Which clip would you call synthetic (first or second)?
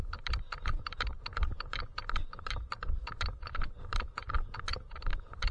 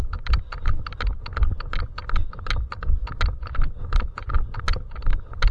first